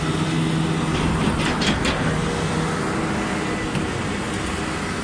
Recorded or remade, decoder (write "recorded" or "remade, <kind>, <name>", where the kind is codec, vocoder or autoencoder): recorded